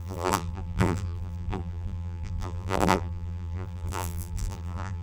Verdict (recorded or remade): remade